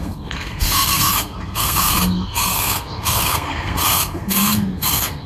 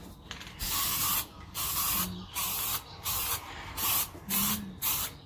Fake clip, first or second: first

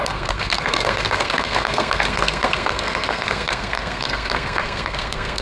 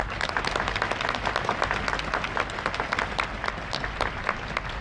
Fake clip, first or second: first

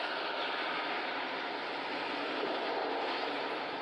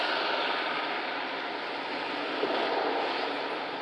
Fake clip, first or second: second